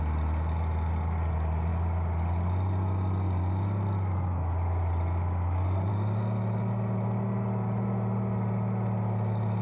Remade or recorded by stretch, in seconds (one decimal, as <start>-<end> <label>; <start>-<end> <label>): 0.0-9.6 recorded